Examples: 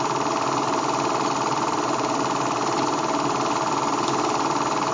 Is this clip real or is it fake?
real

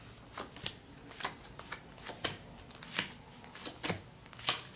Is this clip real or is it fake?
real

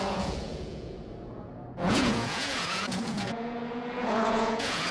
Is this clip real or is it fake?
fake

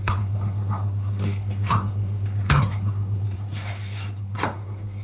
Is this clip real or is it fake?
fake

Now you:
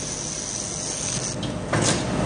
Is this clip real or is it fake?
real